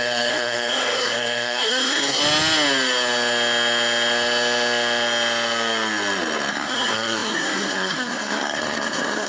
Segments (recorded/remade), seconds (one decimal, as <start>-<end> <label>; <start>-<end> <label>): 0.0-2.2 remade; 2.2-6.5 recorded; 6.5-9.3 remade